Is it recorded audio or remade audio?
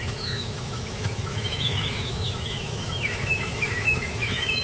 remade